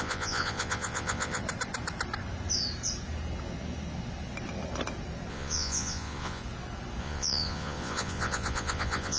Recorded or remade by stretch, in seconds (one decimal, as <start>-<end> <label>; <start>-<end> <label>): 0.0-1.4 remade; 1.4-5.3 recorded; 5.3-6.4 remade; 6.4-7.0 recorded; 7.0-9.2 remade